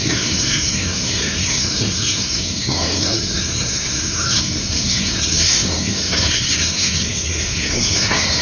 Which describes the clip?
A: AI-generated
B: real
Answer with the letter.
A